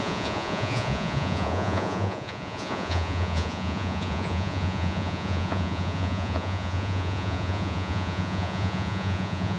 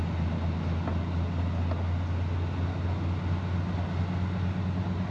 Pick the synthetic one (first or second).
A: first